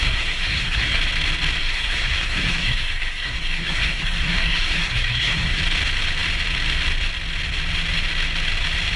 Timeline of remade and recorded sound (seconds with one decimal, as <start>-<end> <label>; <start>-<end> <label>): 0.0-1.0 remade; 1.0-1.6 recorded; 1.6-5.6 remade; 5.6-9.0 recorded